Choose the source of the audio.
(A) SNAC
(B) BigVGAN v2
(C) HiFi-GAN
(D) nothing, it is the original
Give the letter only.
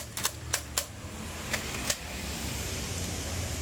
D